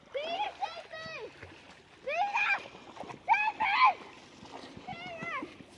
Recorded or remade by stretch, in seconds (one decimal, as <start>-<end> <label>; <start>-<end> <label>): 0.0-5.8 recorded